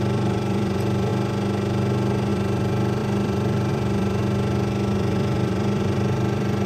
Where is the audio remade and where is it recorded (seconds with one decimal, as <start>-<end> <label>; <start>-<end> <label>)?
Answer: 0.0-1.1 remade; 1.1-2.3 recorded; 2.3-4.2 remade; 4.2-4.9 recorded; 4.9-6.7 remade